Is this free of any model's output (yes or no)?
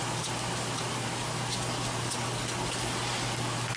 yes